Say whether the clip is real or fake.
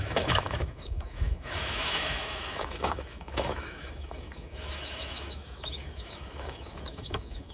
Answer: fake